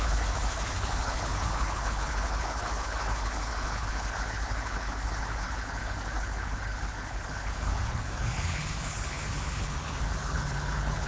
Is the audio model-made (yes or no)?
yes